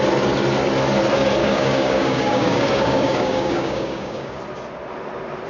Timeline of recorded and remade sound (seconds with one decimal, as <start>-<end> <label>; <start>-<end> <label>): 0.0-1.4 recorded; 1.4-4.4 remade; 4.4-5.5 recorded